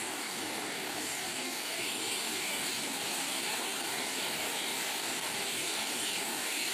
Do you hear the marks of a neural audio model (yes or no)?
yes